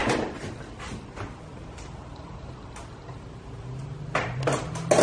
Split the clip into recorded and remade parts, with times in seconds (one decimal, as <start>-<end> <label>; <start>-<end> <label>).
0.0-5.0 recorded